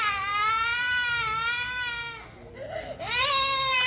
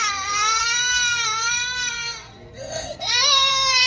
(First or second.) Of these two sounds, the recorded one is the first